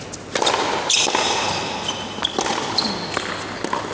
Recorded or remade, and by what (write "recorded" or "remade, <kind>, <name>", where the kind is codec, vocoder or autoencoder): recorded